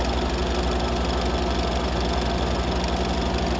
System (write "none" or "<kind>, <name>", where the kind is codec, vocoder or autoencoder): none